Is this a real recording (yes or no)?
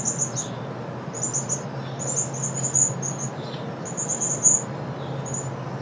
yes